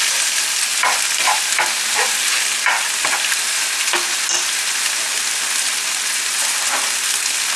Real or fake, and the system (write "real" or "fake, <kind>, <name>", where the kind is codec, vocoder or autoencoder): real